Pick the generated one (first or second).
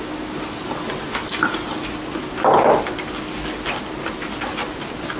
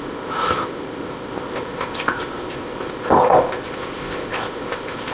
second